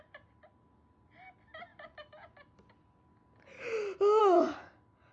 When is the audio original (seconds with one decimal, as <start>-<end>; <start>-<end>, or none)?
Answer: 0.0-5.1